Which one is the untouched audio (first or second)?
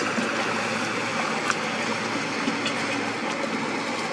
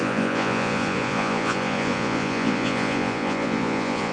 first